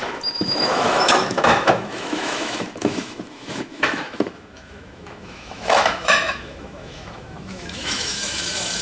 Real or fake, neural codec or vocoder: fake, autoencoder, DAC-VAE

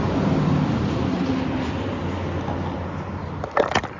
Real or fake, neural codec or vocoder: real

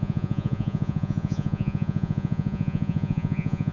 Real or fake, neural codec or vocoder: fake, vocoder, Vocos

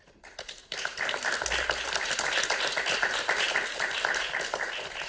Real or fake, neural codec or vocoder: real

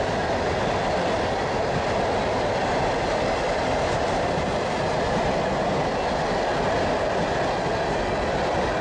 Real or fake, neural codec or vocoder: real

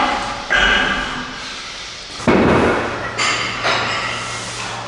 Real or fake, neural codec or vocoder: real